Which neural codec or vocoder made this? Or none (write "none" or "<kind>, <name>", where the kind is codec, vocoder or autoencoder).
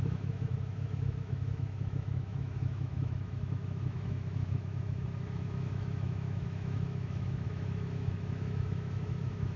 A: autoencoder, DAC-VAE